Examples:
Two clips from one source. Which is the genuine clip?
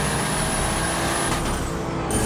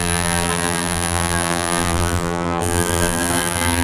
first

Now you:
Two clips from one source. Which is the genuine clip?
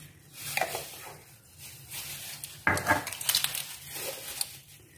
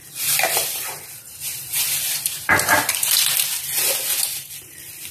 first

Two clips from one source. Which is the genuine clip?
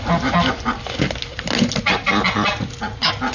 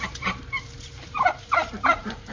first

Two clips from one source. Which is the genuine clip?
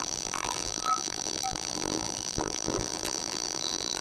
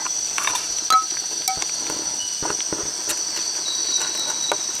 second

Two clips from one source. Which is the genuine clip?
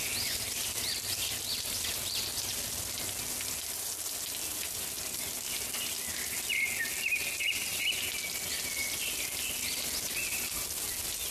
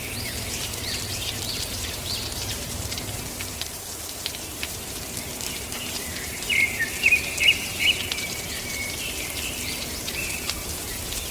first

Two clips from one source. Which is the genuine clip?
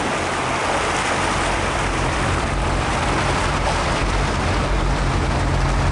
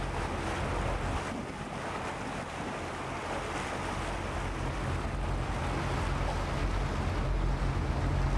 second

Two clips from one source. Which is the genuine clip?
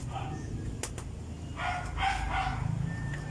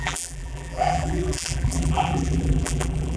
first